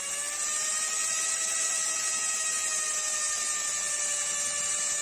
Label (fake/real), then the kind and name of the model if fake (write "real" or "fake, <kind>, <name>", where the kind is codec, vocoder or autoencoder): real